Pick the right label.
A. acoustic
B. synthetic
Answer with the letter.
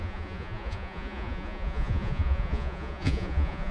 B